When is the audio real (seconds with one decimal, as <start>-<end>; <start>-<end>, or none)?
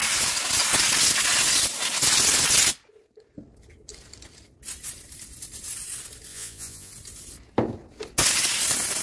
0.0-6.3; 6.9-9.0